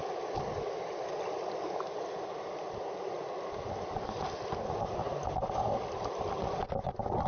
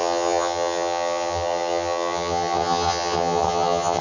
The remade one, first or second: second